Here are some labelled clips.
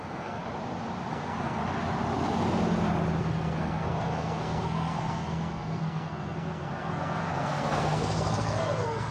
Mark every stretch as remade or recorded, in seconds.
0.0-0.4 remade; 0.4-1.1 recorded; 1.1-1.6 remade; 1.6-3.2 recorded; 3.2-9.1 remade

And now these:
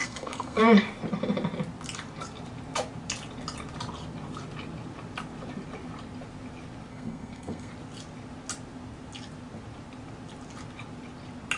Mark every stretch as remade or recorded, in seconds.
0.0-0.6 remade; 0.6-6.9 recorded; 6.9-7.7 remade; 7.7-11.6 recorded

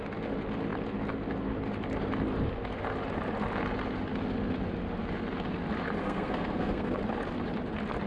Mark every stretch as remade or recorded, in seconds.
0.0-6.0 recorded; 6.0-7.0 remade; 7.0-8.1 recorded

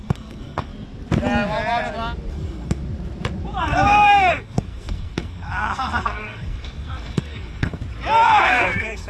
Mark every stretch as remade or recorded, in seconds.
0.0-0.7 remade; 0.7-2.3 recorded; 2.3-2.8 remade; 2.8-3.6 recorded; 3.6-7.8 remade; 7.8-8.4 recorded; 8.4-9.1 remade

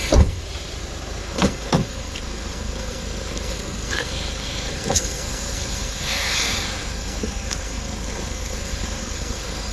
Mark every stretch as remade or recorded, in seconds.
0.0-0.4 remade; 0.4-1.2 recorded; 1.2-9.7 remade